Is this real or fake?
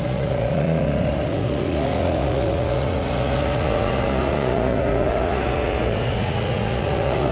fake